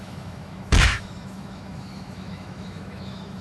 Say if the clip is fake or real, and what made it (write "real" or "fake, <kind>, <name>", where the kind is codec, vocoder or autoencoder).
fake, autoencoder, DAC-VAE